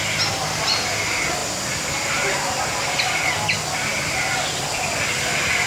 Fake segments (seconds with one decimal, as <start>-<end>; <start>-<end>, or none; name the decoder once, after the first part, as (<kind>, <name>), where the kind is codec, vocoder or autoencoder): none